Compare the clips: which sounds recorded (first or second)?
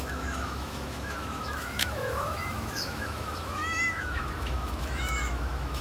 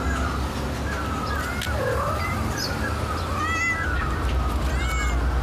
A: second